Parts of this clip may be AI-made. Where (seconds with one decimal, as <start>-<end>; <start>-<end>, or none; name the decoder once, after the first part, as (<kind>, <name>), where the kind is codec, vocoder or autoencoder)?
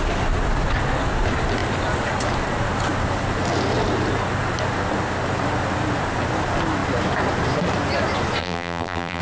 8.4-9.2 (vocoder, BigVGAN v2)